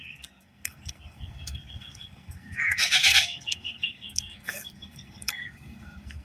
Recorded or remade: remade